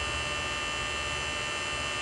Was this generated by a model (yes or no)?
no